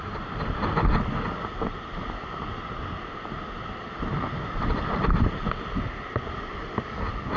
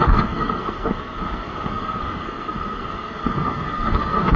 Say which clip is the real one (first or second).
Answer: first